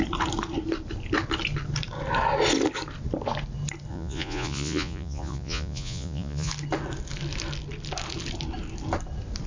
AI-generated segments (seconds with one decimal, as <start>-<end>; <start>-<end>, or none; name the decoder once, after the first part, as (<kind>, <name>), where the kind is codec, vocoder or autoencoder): 3.9-6.5 (vocoder, Vocos)